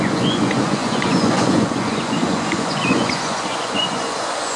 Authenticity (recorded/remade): remade